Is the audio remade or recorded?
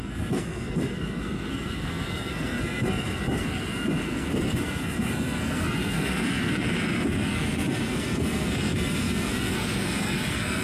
remade